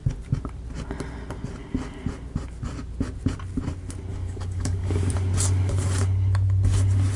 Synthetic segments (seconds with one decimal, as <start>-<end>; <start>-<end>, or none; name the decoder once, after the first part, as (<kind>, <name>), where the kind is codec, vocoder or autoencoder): 4.1-5.0 (codec, DAC)